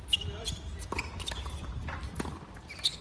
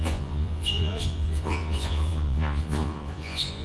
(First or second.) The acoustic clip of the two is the first